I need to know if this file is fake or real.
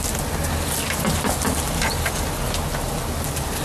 real